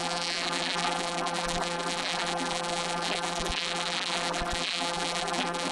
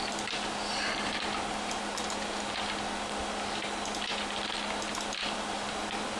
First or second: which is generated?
first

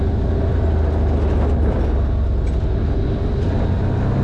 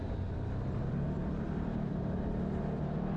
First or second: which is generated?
second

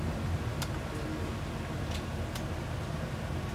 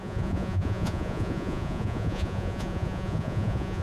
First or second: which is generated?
second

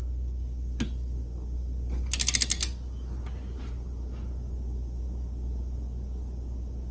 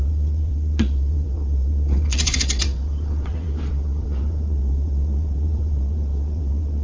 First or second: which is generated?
second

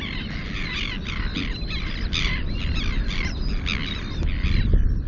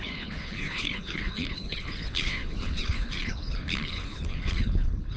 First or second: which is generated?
second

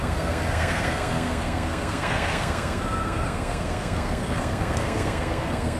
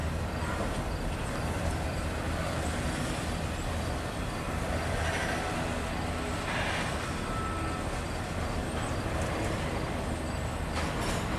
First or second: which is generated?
first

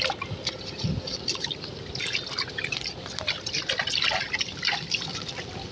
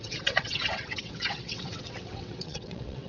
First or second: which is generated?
second